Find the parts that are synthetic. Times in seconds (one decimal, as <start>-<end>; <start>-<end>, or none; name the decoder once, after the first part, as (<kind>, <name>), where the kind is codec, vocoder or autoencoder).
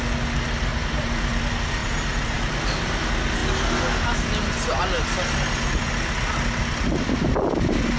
0.7-1.4 (vocoder, BigVGAN v2); 1.8-2.4